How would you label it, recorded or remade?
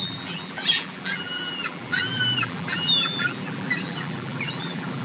remade